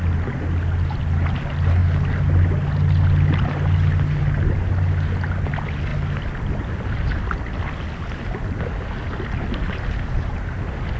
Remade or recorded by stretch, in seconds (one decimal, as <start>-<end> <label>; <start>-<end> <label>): 0.0-11.0 recorded